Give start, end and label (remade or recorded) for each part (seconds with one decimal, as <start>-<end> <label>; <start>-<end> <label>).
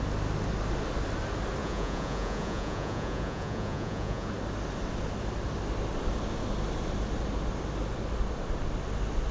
0.0-1.6 recorded; 1.6-4.3 remade; 4.3-9.3 recorded